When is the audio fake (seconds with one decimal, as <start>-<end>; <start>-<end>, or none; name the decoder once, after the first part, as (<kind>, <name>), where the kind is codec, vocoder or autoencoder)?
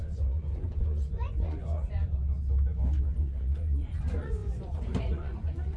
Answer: 0.0-2.2 (vocoder, Vocos); 3.2-5.8